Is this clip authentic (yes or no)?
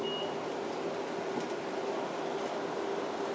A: yes